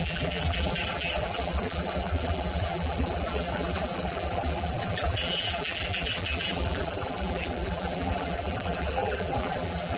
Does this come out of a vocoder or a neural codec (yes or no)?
yes